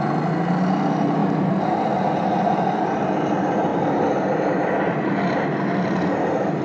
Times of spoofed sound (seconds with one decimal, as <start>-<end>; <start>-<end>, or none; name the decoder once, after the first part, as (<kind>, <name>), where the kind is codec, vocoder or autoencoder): none